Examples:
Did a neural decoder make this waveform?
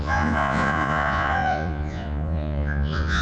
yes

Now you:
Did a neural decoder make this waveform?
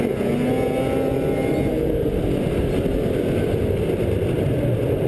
no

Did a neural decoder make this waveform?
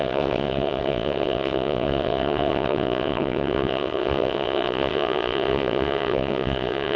yes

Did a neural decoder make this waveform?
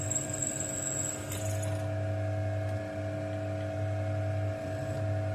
no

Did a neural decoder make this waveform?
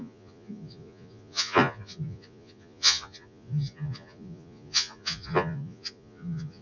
yes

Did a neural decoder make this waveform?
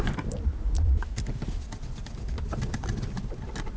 no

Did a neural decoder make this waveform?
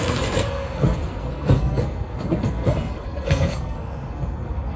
yes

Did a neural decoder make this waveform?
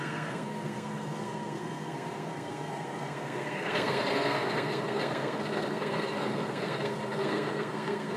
yes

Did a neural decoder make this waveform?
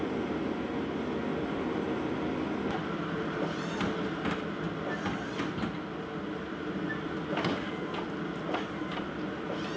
no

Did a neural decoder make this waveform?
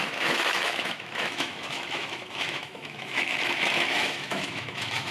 yes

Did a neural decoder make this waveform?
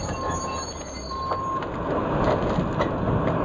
no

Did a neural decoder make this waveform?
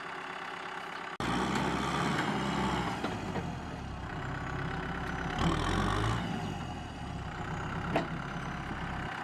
no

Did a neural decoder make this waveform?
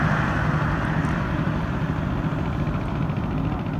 no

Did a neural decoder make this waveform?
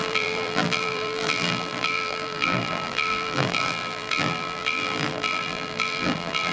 yes